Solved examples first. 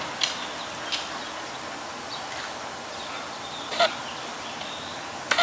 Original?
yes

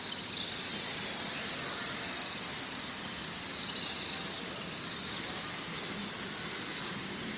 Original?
yes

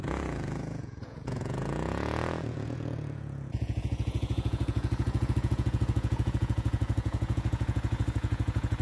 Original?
no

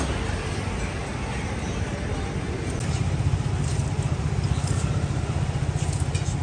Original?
yes